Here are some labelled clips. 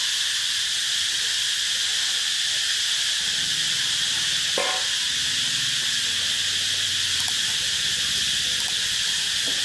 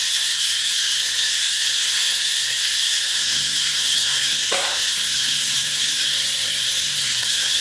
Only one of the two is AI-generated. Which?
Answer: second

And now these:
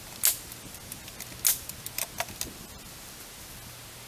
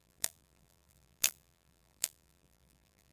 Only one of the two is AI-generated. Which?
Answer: second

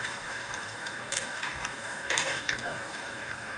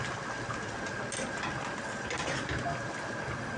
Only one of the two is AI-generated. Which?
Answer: first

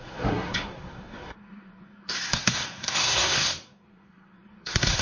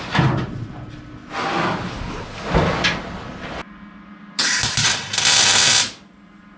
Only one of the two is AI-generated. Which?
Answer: first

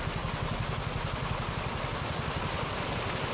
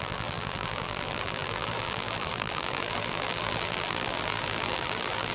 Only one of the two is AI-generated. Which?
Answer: second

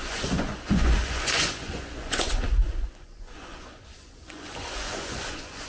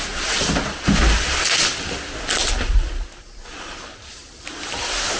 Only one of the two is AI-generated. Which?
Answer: first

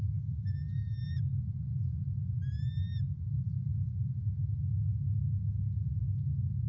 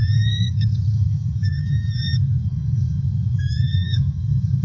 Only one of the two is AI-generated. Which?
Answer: second